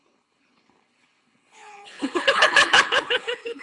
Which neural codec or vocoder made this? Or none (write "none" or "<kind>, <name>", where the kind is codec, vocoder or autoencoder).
codec, HILCodec